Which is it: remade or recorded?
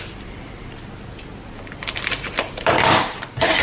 recorded